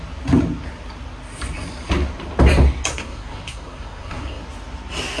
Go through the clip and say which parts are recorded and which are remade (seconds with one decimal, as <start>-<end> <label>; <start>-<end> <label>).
0.0-2.9 recorded; 2.9-4.4 remade; 4.4-5.2 recorded